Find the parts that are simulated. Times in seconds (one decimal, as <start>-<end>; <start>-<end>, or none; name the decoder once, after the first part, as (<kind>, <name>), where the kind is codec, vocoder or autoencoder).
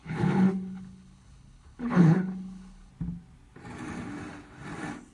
0.0-2.9 (codec, HILCodec)